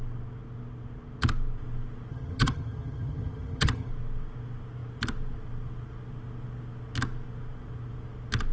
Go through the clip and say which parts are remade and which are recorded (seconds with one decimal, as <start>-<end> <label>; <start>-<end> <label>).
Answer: 0.0-2.1 recorded; 2.1-3.9 remade; 3.9-8.5 recorded